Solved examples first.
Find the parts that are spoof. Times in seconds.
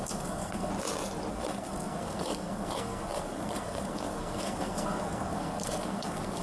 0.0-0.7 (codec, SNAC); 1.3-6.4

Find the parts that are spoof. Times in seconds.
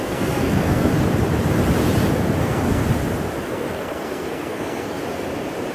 0.0-0.9 (codec, SNAC); 2.4-2.8; 3.4-5.0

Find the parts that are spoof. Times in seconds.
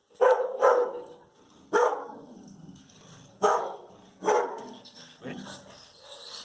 2.0-2.9 (codec, SNAC); 3.3-3.9; 4.5-5.2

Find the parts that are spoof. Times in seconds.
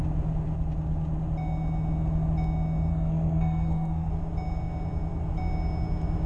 2.9-4.1 (codec, SNAC)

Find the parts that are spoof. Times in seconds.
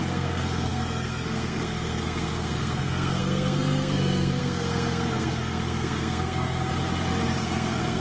0.0-6.7 (codec, SNAC); 7.4-8.0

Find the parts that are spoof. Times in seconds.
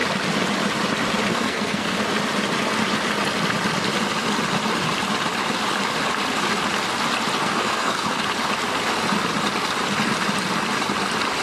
1.3-2.0 (codec, SNAC); 7.4-8.2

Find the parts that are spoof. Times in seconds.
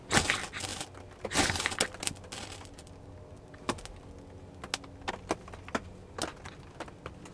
none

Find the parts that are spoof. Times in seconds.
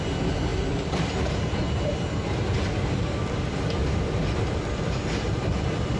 none